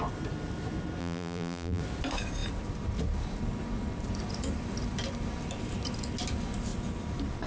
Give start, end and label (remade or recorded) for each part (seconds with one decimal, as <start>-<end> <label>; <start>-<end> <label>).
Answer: 0.0-1.0 recorded; 1.0-1.8 remade; 1.8-7.5 recorded